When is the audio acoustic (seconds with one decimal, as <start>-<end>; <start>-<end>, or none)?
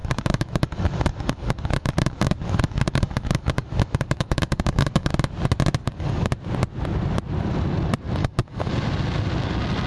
5.1-5.8; 6.3-8.2; 8.7-9.9